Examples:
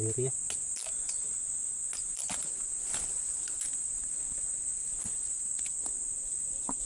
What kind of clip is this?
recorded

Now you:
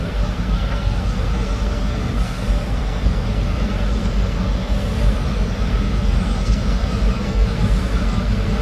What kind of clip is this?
remade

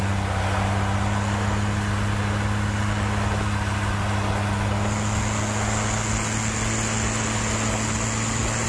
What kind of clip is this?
recorded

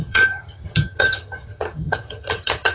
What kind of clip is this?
remade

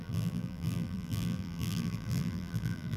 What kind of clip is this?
remade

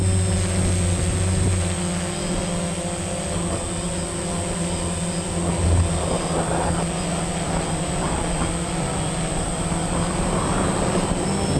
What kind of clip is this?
recorded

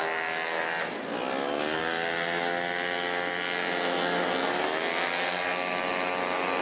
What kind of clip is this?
recorded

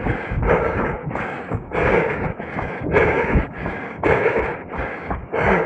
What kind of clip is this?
remade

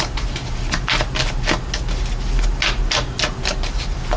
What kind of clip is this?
recorded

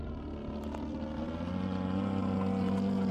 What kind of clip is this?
recorded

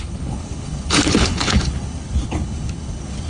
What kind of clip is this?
remade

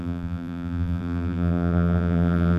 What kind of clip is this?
remade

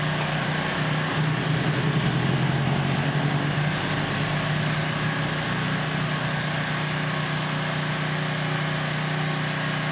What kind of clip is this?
recorded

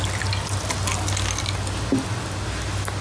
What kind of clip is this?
recorded